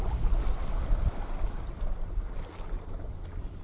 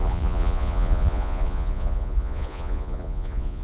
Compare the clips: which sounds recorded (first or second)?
first